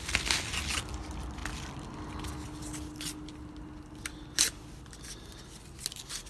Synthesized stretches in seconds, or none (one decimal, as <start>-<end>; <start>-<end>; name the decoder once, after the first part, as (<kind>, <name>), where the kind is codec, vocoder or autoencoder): none

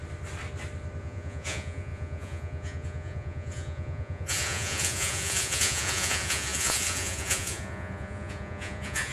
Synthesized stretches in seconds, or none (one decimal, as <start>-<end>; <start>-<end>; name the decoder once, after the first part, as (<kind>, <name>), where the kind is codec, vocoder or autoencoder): 1.0-9.1 (vocoder, Vocos)

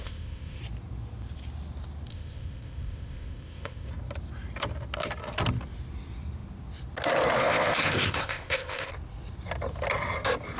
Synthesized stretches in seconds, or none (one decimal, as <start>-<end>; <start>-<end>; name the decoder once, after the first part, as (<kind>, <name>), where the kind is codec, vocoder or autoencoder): 0.0-0.6 (codec, ZipCodec); 2.1-3.9; 7.4-8.9

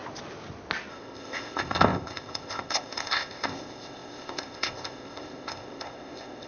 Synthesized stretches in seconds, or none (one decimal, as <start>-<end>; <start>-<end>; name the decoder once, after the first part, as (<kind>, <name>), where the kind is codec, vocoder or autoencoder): 0.9-6.5 (codec, ZipCodec)

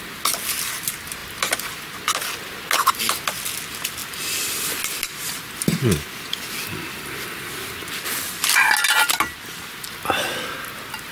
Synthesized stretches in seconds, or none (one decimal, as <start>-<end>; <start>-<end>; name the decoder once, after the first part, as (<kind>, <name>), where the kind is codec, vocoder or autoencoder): none

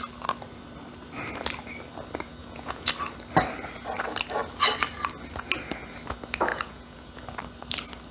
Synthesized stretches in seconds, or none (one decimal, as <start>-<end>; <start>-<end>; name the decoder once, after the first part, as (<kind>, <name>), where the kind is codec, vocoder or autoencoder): 2.4-2.9 (vocoder, Vocos); 6.5-7.2

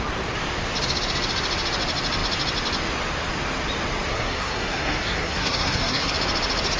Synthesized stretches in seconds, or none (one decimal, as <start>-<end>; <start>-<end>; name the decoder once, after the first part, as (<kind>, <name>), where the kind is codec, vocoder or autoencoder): 4.1-6.1 (codec, SNAC)